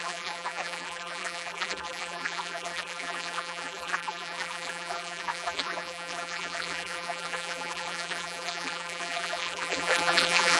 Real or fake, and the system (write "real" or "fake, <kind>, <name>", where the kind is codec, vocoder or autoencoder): fake, vocoder, BigVGAN v2